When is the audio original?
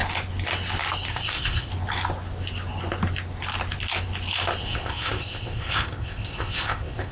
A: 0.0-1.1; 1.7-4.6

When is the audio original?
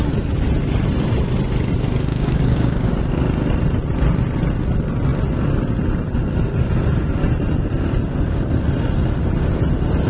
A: 0.0-2.1; 2.9-10.1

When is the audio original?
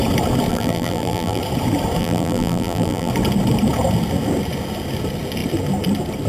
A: 0.0-0.5; 1.4-2.0; 3.1-6.3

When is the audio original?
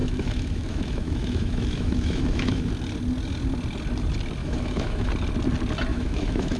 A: 2.7-4.4; 5.1-5.9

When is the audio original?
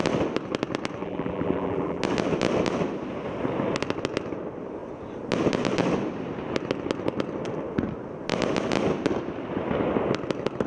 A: 0.0-1.0; 2.0-10.7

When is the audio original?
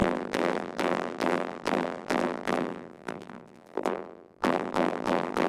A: none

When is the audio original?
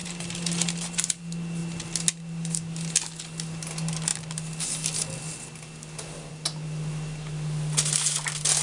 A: 0.0-8.6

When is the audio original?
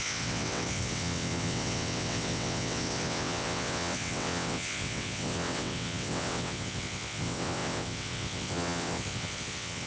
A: none